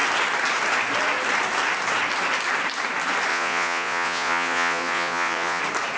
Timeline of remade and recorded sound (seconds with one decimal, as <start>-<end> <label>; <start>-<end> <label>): 0.0-3.3 recorded; 3.3-5.6 remade; 5.6-6.0 recorded